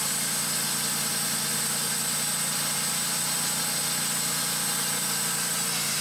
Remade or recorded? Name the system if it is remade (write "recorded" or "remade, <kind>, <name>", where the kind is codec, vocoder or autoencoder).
recorded